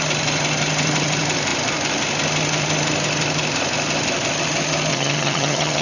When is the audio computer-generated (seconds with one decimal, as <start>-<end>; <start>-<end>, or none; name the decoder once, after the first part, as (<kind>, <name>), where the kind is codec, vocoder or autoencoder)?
4.9-5.8 (vocoder, HiFi-GAN)